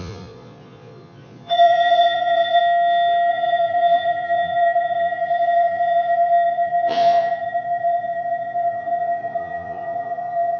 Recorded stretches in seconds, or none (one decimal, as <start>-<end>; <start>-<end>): 2.6-3.3